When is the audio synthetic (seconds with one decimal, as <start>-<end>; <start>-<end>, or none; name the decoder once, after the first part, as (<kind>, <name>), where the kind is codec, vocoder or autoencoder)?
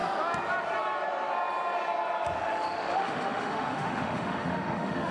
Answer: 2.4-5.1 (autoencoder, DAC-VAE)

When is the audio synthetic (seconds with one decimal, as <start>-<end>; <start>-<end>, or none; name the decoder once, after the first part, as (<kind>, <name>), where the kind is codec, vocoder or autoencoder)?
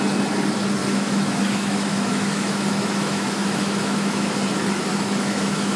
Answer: 0.8-4.3 (autoencoder, DAC-VAE); 4.9-5.8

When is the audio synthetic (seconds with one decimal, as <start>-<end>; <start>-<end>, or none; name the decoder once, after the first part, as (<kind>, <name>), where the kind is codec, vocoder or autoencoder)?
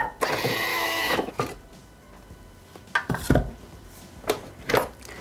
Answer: 0.7-1.3 (autoencoder, DAC-VAE)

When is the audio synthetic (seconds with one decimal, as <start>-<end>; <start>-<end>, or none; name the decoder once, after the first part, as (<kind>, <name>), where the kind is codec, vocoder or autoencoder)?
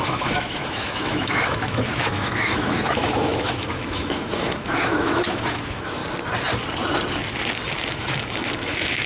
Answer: 0.0-6.0 (autoencoder, DAC-VAE); 7.9-9.1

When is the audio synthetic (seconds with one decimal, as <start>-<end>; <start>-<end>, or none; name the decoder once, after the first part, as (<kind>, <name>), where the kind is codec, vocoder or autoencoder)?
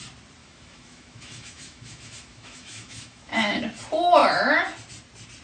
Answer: 0.4-3.6 (autoencoder, DAC-VAE)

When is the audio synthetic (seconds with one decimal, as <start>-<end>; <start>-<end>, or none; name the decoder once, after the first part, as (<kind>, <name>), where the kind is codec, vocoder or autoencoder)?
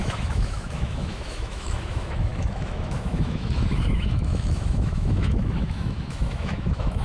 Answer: 0.0-7.0 (autoencoder, DAC-VAE)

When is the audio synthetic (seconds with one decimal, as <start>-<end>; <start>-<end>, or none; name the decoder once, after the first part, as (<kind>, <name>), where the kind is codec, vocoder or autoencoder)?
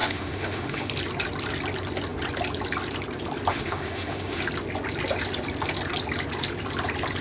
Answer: 0.0-0.9 (autoencoder, DAC-VAE); 3.5-4.4